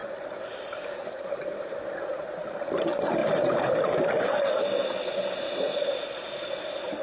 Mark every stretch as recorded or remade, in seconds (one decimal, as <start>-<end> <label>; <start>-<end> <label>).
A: 0.0-1.6 remade; 1.6-3.2 recorded; 3.2-4.2 remade; 4.2-7.0 recorded